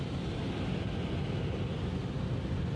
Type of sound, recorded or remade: recorded